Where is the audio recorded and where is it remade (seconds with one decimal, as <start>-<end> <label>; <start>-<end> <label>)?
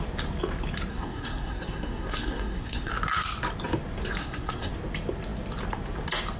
0.0-0.9 recorded; 0.9-2.9 remade; 2.9-4.2 recorded; 4.2-4.7 remade; 4.7-6.4 recorded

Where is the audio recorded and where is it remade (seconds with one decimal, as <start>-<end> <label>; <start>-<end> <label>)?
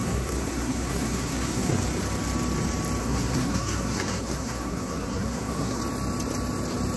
0.0-1.7 remade; 1.7-3.0 recorded; 3.0-5.8 remade; 5.8-7.0 recorded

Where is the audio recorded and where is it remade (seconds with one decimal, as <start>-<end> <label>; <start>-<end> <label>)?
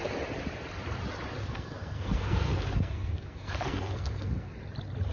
0.0-1.4 recorded; 1.4-4.5 remade; 4.5-5.1 recorded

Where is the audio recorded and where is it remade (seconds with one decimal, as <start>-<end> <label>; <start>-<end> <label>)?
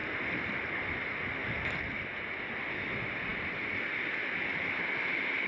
0.0-5.5 recorded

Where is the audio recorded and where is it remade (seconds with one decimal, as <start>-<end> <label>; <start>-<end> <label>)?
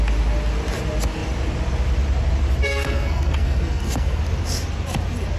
0.0-2.7 recorded; 2.7-4.2 remade; 4.2-5.4 recorded